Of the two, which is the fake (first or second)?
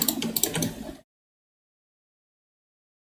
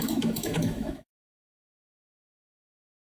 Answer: second